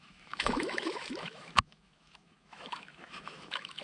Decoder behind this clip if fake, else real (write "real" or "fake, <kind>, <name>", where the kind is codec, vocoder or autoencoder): fake, autoencoder, DAC-VAE